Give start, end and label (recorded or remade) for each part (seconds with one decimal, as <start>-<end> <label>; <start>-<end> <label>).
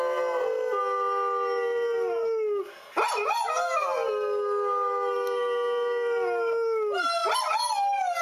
0.0-8.2 recorded